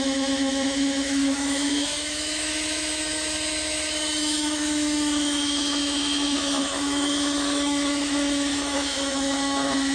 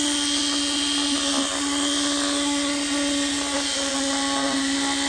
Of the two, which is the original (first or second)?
second